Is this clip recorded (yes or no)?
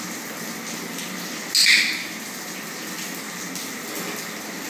yes